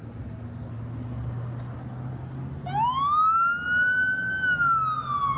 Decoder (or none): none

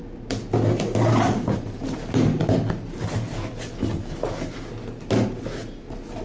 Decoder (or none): none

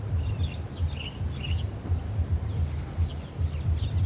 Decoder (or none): none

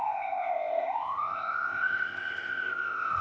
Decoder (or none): codec, ZipCodec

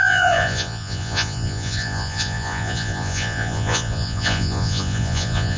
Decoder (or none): vocoder, Vocos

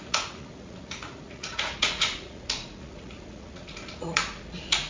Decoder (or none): vocoder, Vocos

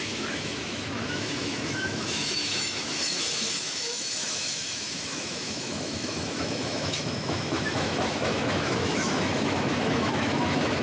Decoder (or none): autoencoder, DAC-VAE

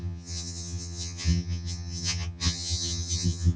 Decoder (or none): vocoder, HiFi-GAN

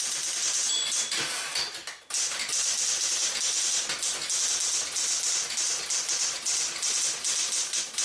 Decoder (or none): none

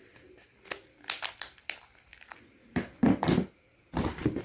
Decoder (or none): vocoder, BigVGAN v2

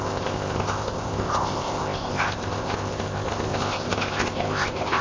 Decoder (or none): codec, ZipCodec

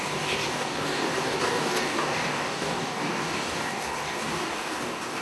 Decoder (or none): codec, DAC